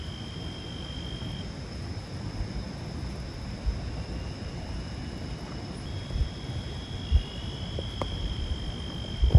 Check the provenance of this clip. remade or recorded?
recorded